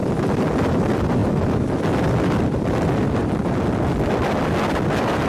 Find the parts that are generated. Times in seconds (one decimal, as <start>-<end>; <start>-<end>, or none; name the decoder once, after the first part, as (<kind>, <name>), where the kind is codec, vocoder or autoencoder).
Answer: none